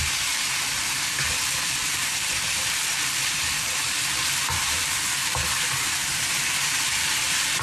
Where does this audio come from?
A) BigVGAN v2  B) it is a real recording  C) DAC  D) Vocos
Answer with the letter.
A